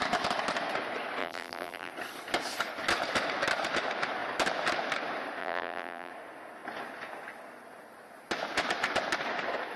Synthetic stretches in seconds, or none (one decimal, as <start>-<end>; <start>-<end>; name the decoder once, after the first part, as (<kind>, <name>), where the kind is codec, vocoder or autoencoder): 1.2-1.9 (vocoder, BigVGAN v2); 5.4-6.1

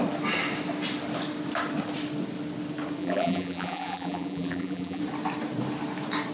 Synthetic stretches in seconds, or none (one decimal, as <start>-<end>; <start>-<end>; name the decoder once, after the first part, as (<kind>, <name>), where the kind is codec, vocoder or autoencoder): 3.0-5.0 (vocoder, BigVGAN v2)

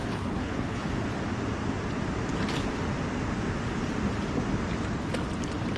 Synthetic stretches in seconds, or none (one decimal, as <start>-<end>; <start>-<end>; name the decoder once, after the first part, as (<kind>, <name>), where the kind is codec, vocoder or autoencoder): 0.0-0.9 (codec, HILCodec)

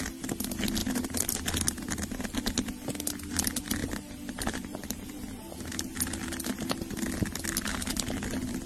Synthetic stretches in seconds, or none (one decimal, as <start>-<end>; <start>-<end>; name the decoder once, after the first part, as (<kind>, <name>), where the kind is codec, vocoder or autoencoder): 0.8-1.3 (vocoder, BigVGAN v2); 3.8-6.0

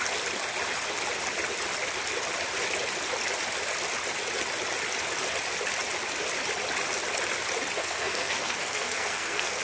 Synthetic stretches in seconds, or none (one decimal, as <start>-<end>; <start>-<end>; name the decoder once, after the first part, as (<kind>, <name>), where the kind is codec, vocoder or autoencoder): 7.8-9.6 (codec, SNAC)

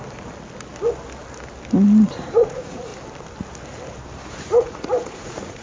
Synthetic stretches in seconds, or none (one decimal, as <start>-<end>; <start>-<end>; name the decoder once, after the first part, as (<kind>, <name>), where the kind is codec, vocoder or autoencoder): 2.1-2.9 (vocoder, Vocos); 4.3-5.6

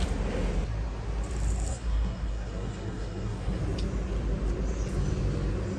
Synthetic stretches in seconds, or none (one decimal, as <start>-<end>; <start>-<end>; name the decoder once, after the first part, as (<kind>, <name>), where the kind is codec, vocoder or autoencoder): 1.7-3.6 (codec, SNAC)

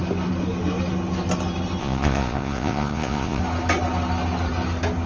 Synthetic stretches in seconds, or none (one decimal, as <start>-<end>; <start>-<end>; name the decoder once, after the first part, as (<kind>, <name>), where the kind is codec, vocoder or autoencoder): 1.8-3.4 (vocoder, Vocos)